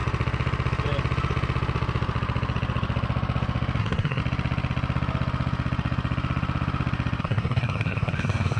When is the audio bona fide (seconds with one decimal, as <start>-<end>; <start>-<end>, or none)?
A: 0.0-3.8; 4.2-7.2